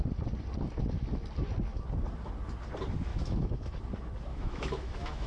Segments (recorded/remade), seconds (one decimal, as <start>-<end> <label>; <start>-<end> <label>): 0.0-3.1 recorded; 3.1-3.8 remade; 3.8-4.3 recorded; 4.3-5.3 remade